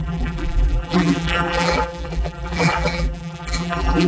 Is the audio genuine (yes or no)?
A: no